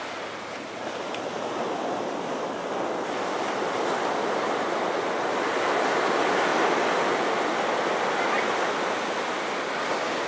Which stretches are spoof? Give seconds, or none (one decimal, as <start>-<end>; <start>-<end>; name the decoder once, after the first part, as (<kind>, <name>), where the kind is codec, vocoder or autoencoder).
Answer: none

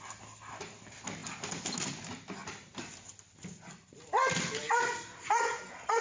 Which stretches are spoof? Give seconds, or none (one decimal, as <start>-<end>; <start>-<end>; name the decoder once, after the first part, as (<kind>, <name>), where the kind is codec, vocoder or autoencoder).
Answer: none